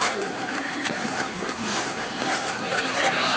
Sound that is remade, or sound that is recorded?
remade